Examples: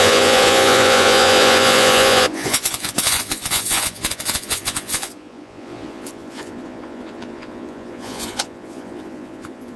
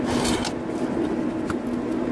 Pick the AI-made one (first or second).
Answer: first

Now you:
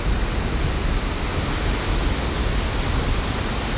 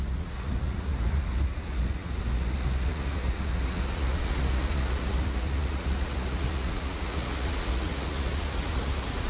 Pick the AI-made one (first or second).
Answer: second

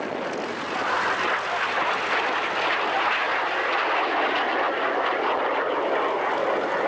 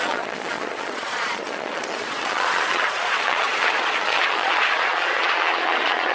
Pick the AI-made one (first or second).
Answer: second